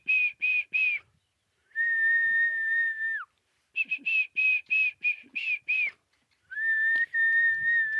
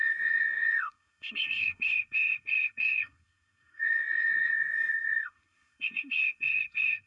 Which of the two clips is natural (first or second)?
first